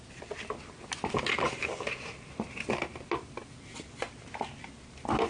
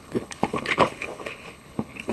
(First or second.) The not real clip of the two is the second